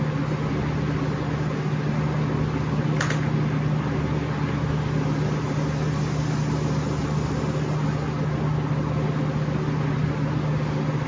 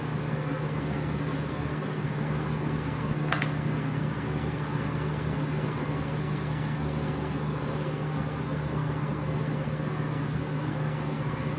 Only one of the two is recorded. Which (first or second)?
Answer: first